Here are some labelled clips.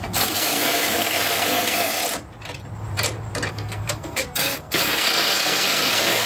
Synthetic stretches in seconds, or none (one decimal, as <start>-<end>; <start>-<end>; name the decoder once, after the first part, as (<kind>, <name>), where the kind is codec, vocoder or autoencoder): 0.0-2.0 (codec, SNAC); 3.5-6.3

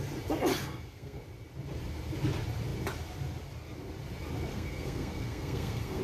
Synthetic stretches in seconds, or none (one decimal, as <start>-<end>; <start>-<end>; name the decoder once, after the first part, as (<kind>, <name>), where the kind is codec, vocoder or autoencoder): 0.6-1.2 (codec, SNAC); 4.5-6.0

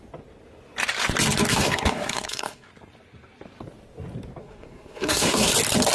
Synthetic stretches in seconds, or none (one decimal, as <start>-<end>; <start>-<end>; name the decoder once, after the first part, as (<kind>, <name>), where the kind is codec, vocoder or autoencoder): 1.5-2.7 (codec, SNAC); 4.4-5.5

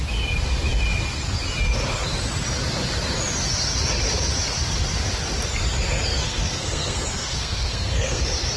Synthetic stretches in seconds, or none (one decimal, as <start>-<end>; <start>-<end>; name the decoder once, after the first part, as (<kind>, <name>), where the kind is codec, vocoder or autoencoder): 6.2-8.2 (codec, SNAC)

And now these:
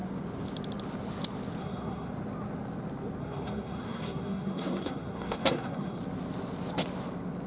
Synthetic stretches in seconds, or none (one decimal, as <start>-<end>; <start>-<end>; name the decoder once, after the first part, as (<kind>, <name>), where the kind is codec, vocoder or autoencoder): 1.6-2.1 (codec, SNAC); 3.2-6.0

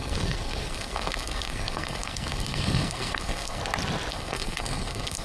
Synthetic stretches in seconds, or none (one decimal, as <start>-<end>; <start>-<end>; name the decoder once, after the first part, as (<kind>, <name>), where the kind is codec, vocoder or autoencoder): 0.0-3.6 (codec, SNAC); 4.1-5.2

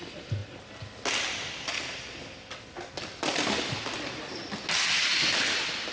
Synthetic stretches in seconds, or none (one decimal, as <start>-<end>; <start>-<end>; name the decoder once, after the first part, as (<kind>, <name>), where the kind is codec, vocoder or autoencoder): none

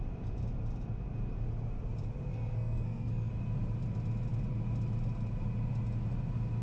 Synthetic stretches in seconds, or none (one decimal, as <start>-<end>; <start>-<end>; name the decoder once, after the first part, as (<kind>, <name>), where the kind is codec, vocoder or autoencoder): 2.3-3.3 (codec, SNAC)